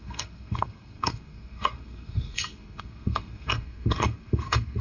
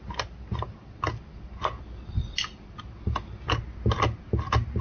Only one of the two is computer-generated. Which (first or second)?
first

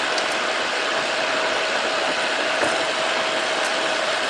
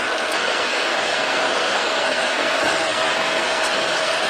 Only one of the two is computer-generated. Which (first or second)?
second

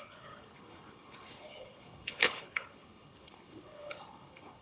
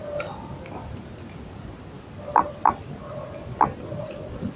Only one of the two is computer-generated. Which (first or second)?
first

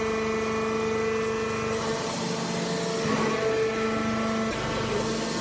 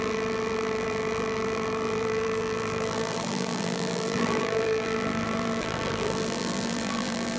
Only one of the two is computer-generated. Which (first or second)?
second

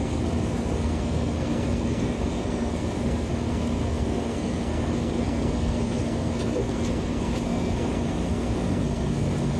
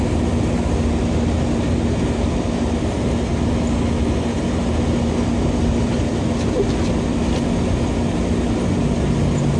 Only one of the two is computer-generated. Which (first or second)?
first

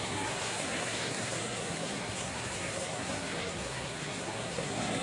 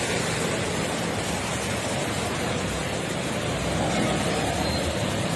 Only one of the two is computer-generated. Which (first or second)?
first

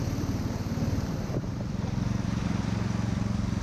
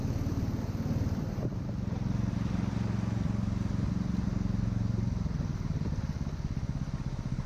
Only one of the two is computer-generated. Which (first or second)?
first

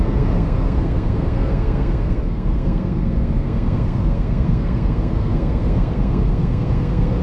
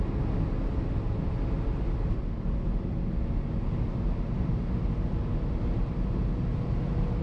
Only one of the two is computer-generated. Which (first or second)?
first